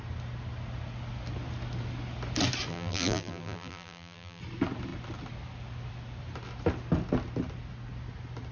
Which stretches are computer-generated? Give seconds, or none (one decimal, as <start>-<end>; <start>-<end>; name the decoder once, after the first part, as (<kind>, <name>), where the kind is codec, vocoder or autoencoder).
2.7-4.4 (vocoder, BigVGAN v2)